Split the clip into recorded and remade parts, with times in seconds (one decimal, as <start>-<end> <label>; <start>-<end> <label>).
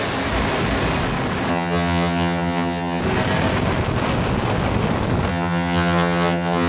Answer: 0.0-1.5 recorded; 1.5-3.0 remade; 3.0-5.3 recorded; 5.3-6.7 remade